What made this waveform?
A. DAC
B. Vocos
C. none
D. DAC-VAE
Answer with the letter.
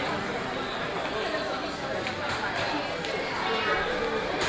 C